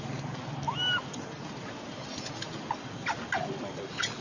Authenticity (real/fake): real